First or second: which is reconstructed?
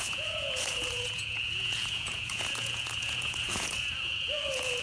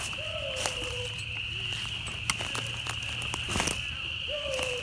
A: first